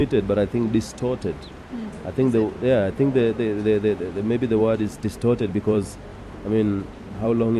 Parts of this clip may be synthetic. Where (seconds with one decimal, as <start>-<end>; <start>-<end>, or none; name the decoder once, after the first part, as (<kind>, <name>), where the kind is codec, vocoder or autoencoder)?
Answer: 4.6-7.6 (vocoder, BigVGAN v2)